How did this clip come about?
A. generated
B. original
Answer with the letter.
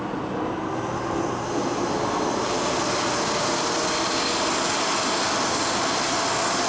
B